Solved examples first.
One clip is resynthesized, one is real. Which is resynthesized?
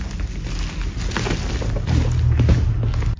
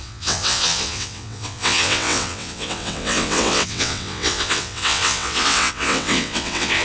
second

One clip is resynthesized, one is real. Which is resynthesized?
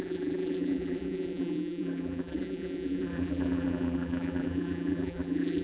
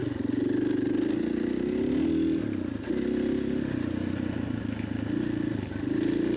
first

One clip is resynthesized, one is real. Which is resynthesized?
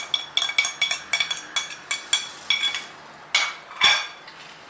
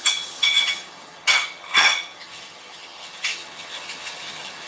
second